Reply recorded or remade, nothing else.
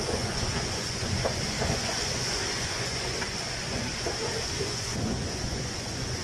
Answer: remade